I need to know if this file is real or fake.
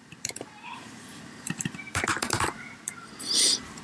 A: fake